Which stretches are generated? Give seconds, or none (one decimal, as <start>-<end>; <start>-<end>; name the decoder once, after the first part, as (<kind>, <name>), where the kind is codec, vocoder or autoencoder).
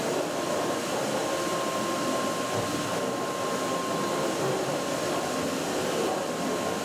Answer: 0.0-1.2 (vocoder, BigVGAN v2); 5.2-6.8